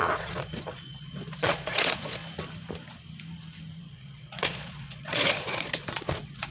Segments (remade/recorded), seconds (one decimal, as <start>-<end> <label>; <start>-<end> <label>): 0.0-2.2 remade; 2.2-3.8 recorded; 3.8-6.5 remade